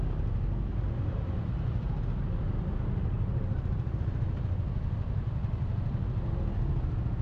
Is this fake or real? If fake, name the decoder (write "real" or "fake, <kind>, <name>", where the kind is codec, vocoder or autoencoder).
real